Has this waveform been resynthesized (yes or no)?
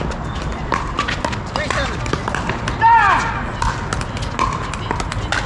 no